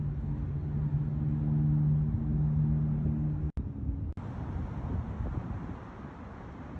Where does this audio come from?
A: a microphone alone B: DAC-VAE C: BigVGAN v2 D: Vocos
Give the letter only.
A